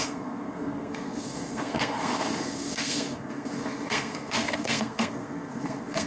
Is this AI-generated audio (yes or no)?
yes